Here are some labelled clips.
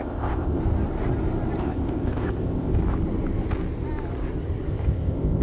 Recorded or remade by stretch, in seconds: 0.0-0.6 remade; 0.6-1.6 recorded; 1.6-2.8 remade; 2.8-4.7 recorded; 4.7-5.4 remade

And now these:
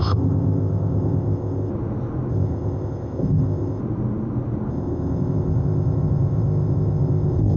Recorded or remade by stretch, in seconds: 0.0-1.7 remade; 1.7-2.3 recorded; 2.3-3.8 remade; 3.8-4.7 recorded; 4.7-7.6 remade

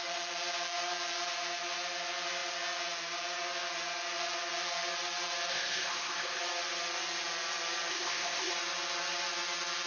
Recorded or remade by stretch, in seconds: 0.0-5.5 recorded; 5.5-6.4 remade; 6.4-7.9 recorded; 7.9-8.5 remade; 8.5-9.9 recorded

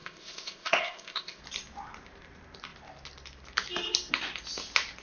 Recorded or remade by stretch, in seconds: 0.0-1.4 remade; 1.4-5.0 recorded

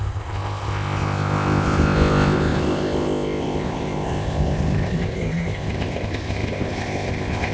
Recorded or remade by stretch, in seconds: 0.0-7.5 remade

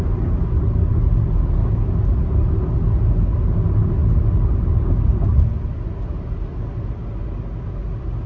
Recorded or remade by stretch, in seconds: 0.0-8.3 recorded

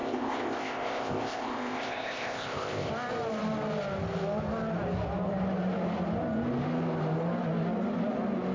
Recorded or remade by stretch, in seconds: 0.0-2.9 remade; 2.9-8.5 recorded

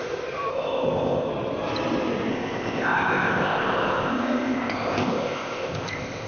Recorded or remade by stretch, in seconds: 0.0-0.5 recorded; 0.5-1.3 remade; 1.3-2.3 recorded; 2.3-6.3 remade